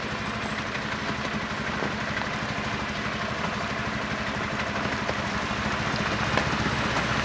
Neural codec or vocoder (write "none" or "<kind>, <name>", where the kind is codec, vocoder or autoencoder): none